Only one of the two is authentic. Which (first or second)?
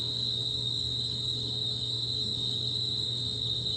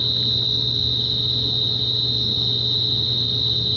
second